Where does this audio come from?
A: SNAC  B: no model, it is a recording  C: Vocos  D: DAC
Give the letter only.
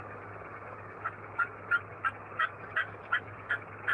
D